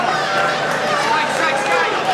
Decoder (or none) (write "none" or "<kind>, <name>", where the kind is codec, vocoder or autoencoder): vocoder, BigVGAN v2